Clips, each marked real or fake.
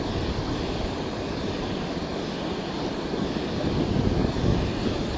real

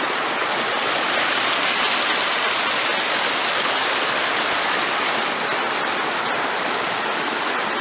real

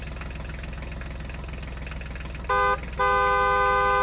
real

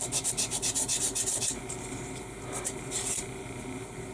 fake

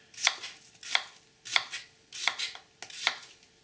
real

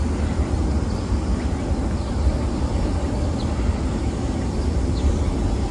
real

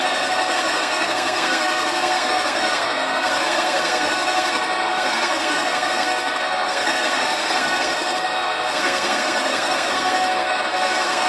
fake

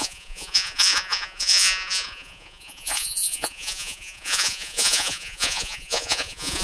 fake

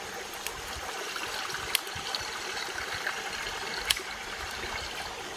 real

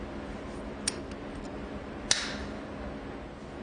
real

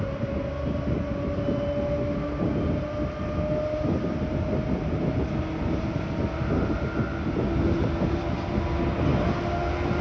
real